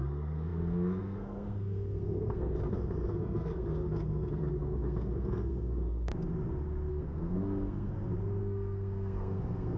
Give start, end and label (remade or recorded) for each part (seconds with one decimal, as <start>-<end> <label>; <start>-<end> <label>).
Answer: 0.0-6.1 remade; 6.1-6.9 recorded; 6.9-7.9 remade; 7.9-8.4 recorded; 8.4-9.8 remade